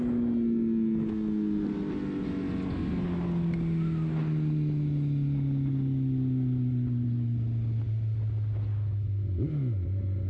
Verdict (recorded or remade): recorded